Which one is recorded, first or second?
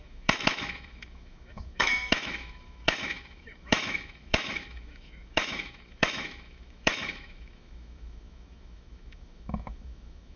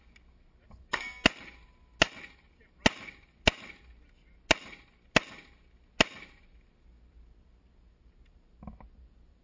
second